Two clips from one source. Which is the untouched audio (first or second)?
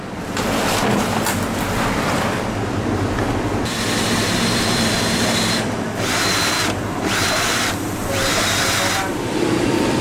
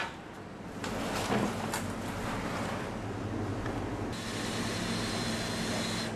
second